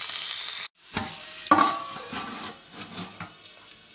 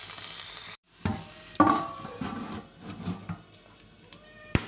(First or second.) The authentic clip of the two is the first